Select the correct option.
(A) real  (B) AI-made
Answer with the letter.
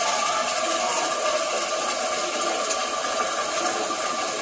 A